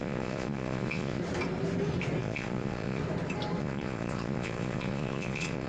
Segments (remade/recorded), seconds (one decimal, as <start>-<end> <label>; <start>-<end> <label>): 0.0-1.2 remade; 1.2-2.2 recorded; 2.2-3.0 remade; 3.0-3.6 recorded; 3.6-5.7 remade